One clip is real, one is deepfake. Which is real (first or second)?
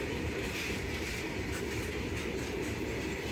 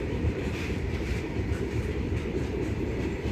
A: first